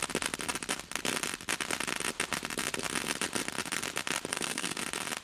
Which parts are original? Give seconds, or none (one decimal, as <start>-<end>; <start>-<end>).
0.0-4.3; 4.8-5.2

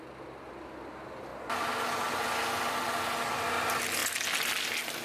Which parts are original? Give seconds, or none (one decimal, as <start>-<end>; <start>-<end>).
0.0-5.0

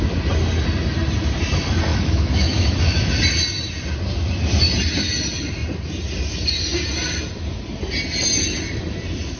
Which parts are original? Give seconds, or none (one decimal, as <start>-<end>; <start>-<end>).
0.0-1.9; 3.1-9.4

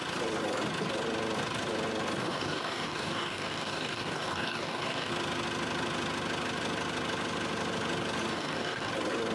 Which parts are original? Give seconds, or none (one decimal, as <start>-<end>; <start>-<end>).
0.0-2.2; 5.1-8.3; 8.9-9.3

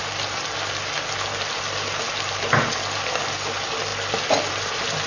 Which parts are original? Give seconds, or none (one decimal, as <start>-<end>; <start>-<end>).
0.0-5.1

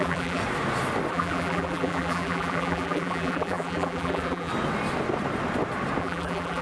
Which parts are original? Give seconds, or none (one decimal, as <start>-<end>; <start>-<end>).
0.4-1.1; 4.5-6.0

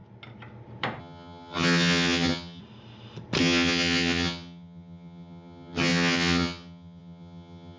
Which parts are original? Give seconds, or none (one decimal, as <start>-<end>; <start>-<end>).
0.0-1.0; 2.6-3.4